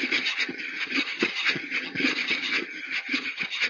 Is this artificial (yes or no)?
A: yes